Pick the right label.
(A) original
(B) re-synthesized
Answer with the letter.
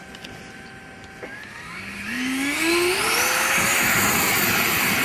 A